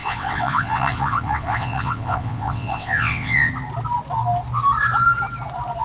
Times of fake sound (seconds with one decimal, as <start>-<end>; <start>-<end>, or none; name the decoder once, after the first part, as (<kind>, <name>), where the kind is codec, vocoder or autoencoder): 0.0-3.5 (vocoder, WaveNeXt)